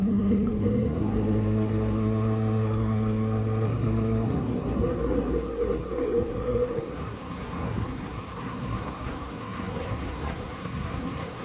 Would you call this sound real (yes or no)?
no